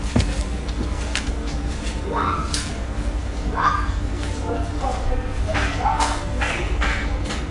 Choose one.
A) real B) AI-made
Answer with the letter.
B